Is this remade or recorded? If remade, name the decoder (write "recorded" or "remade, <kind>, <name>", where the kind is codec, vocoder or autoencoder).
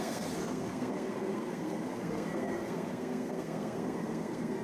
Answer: remade, codec, SNAC